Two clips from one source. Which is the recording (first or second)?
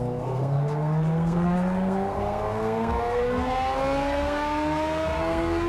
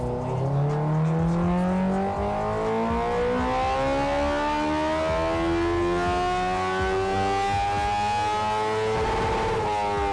second